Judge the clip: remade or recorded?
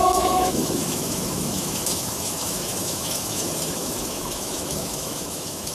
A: remade